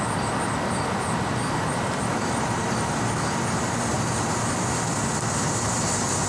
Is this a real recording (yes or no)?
no